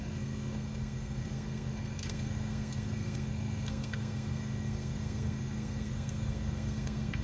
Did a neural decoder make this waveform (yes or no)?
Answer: yes